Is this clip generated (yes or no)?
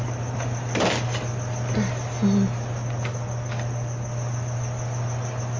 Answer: no